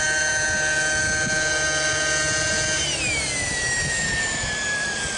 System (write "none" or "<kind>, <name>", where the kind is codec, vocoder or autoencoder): none